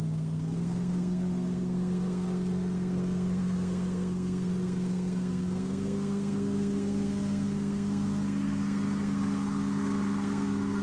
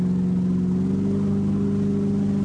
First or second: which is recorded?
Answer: second